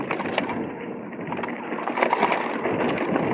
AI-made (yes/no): no